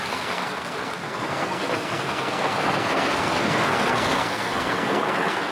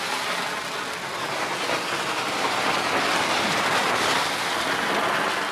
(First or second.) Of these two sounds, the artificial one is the first